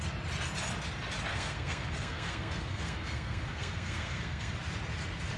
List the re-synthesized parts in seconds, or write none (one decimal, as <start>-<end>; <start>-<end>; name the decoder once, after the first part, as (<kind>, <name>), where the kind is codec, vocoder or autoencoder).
1.3-4.5 (codec, SNAC)